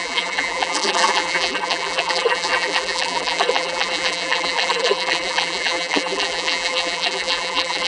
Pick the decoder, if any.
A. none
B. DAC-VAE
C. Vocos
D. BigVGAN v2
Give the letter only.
D